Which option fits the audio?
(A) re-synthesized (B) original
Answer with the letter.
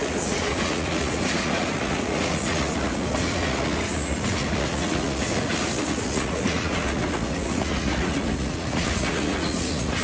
A